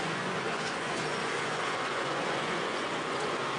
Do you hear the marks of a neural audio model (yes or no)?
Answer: yes